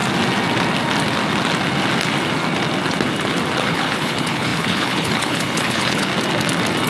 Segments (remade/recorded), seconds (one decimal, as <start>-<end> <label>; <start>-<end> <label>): 0.0-3.6 recorded; 3.6-6.1 remade; 6.1-6.9 recorded